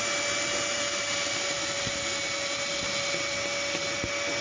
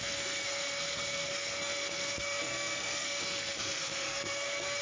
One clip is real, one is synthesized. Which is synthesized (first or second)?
second